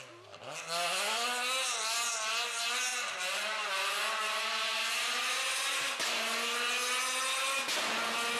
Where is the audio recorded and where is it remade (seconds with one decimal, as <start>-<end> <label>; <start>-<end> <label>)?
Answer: 0.0-2.9 recorded; 2.9-3.7 remade; 3.7-8.4 recorded